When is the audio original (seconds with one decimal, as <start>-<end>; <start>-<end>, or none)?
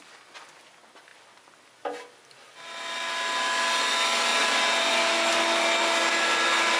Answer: 0.0-6.8